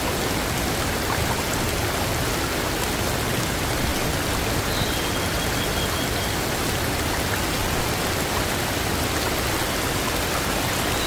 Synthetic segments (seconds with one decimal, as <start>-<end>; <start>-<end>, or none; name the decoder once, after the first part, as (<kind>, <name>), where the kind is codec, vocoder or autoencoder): none